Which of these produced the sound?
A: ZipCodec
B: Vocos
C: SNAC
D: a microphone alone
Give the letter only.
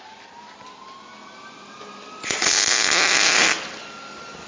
D